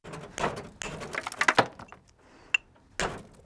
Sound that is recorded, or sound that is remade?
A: recorded